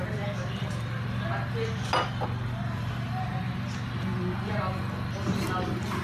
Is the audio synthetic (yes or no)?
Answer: no